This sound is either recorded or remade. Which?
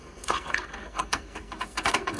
remade